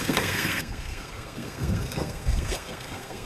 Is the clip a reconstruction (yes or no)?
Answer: yes